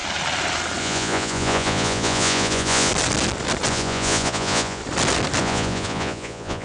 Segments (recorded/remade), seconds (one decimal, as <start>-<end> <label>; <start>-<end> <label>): 0.0-0.8 recorded; 0.8-2.9 remade; 2.9-3.7 recorded; 3.7-4.8 remade; 4.8-5.4 recorded; 5.4-6.6 remade